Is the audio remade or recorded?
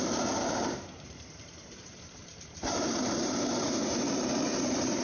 remade